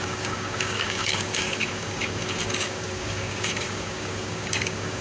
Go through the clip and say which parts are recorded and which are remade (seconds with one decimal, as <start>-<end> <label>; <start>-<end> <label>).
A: 0.0-5.0 remade